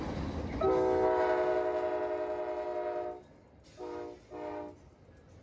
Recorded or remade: recorded